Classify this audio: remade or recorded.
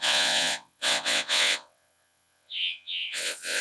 remade